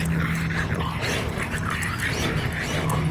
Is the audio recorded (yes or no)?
yes